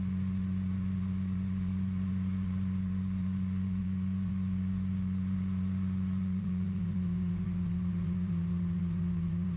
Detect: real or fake fake